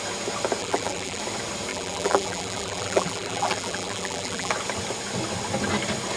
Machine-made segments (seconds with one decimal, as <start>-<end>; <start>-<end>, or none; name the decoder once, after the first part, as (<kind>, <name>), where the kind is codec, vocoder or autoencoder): 0.6-1.2 (vocoder, BigVGAN v2); 1.7-4.5